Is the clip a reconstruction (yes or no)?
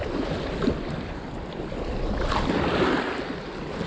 no